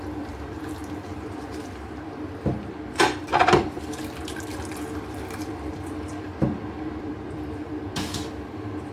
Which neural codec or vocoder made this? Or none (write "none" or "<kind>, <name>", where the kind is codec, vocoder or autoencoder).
vocoder, BigVGAN v2